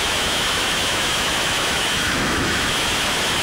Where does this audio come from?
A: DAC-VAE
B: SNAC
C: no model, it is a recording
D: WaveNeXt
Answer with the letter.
A